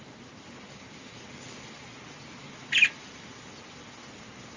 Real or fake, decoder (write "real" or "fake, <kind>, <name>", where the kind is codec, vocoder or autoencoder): real